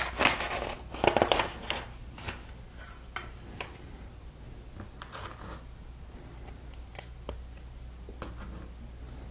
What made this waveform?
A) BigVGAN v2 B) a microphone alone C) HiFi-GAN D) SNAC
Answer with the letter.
B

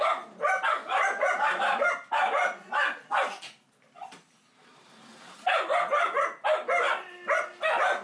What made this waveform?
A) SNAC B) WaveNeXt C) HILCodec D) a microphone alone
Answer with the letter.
D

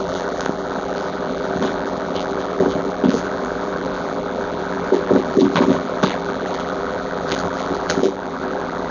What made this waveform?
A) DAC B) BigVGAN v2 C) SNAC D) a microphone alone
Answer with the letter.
B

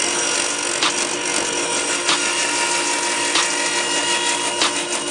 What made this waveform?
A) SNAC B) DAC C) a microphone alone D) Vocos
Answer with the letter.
C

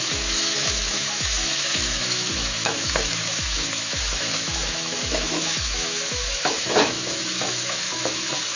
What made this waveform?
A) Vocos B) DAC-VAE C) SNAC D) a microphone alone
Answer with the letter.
B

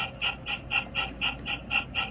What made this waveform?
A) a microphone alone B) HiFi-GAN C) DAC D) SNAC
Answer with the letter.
A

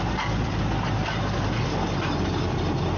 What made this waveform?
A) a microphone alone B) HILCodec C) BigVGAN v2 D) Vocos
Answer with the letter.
A